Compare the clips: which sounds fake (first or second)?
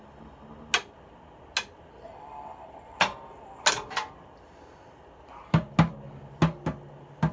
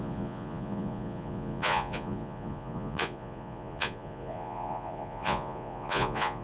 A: second